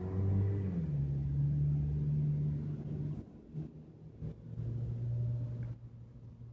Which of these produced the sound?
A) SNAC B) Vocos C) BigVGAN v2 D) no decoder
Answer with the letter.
D